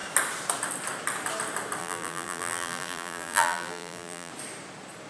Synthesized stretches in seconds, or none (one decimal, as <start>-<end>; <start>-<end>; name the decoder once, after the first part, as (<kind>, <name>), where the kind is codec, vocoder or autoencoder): 1.8-4.3 (vocoder, BigVGAN v2)